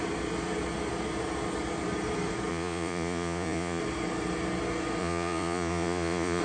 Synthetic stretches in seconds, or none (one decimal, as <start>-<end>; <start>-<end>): 2.5-3.8; 5.0-6.4